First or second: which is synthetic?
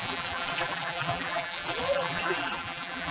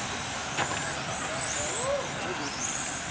first